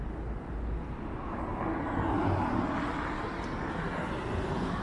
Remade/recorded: recorded